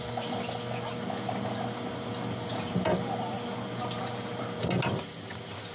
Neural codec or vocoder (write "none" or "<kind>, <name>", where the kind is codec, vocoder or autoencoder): none